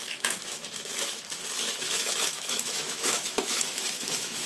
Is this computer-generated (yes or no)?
yes